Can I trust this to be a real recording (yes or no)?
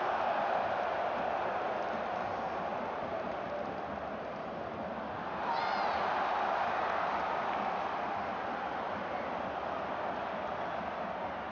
yes